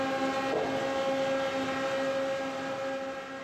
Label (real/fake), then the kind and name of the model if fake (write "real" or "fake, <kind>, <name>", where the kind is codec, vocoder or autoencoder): real